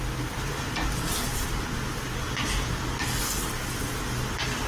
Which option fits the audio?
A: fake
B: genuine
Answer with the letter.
B